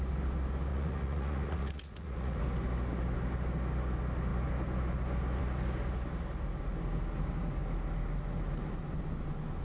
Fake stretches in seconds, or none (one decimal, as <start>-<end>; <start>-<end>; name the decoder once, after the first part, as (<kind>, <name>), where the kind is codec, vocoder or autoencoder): 0.7-2.4 (vocoder, Vocos)

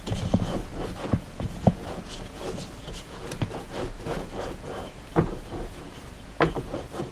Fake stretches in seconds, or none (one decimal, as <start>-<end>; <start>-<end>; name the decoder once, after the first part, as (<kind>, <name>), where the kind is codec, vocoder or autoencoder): 0.0-7.1 (vocoder, Vocos)

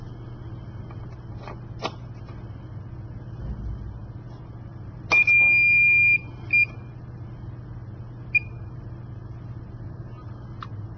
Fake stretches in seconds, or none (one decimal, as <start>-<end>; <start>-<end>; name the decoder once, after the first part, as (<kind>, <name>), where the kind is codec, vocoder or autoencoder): none

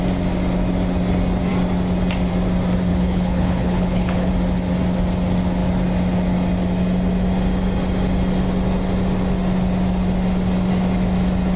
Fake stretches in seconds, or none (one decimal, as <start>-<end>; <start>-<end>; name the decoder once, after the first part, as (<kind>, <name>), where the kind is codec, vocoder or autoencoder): 2.9-4.3 (codec, HILCodec)

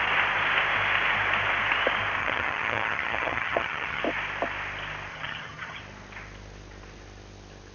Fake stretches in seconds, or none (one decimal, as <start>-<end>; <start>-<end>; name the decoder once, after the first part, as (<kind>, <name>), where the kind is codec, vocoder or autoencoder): 2.2-4.0 (vocoder, HiFi-GAN); 5.1-5.8